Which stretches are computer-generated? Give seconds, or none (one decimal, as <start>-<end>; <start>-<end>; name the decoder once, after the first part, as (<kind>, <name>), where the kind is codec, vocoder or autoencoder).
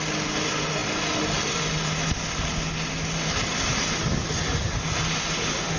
none